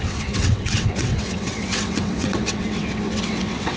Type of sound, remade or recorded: remade